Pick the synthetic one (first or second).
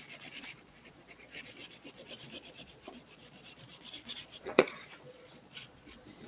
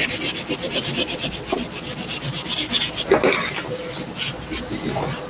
first